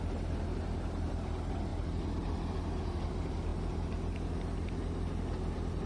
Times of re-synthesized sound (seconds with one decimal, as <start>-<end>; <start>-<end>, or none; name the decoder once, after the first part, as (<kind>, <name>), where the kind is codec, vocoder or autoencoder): none